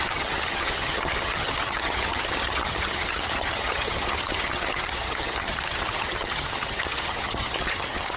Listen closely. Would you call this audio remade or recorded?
remade